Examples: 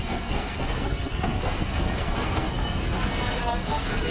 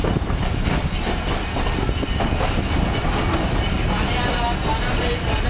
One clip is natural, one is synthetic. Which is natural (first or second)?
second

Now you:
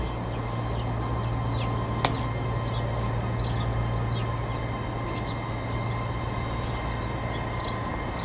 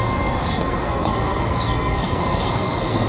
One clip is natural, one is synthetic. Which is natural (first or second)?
first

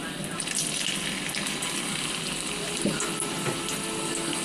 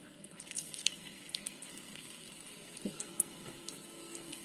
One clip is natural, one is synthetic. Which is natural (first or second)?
first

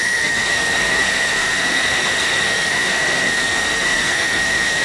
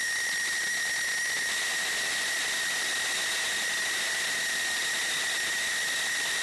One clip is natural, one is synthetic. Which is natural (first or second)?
second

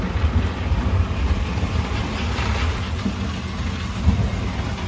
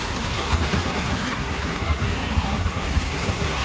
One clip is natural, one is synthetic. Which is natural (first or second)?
first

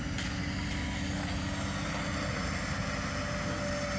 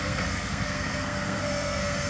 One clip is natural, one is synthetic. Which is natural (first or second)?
first